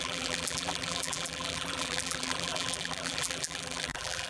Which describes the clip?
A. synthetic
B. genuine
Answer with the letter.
A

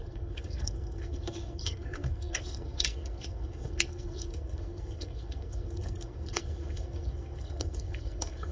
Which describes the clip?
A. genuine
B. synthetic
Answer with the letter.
B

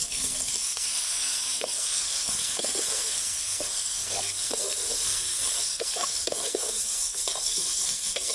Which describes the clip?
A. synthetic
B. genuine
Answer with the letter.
A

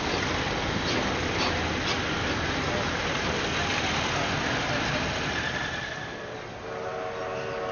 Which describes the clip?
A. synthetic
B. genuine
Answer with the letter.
B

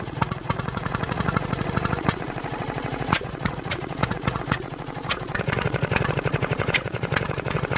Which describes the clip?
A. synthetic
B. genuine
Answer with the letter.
A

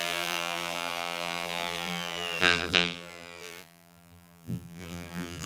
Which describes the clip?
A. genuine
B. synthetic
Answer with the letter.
B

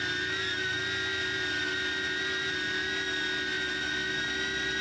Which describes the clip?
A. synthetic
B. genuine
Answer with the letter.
B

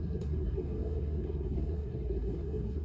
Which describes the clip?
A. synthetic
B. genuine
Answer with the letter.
A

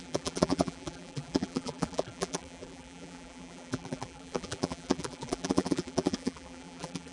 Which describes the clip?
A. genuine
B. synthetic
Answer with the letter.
B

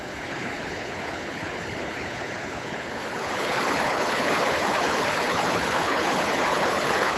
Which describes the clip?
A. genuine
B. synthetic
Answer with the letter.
B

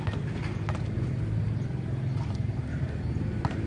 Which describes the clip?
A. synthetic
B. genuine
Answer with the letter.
B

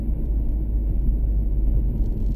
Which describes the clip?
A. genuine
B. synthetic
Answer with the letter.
A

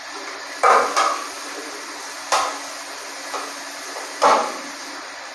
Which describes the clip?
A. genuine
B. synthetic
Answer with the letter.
A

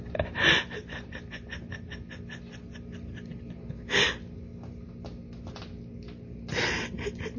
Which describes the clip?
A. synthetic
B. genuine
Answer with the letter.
B